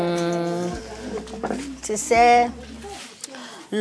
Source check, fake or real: real